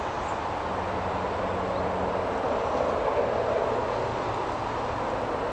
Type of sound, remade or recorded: recorded